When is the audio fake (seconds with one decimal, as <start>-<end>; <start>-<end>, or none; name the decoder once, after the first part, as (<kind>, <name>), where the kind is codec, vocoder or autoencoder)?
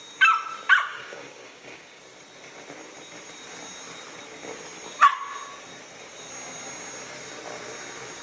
0.9-2.0 (codec, DAC)